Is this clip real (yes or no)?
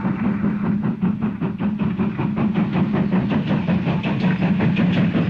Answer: yes